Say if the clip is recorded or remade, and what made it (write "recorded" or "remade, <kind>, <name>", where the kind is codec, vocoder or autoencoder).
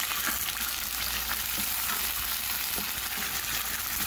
recorded